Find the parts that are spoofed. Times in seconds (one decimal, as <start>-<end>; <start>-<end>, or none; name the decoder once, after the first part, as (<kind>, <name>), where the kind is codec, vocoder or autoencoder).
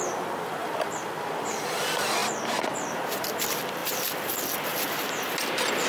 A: 0.0-2.2 (vocoder, BigVGAN v2); 2.7-3.8; 4.6-5.9